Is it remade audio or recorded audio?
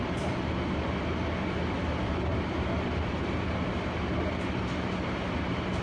recorded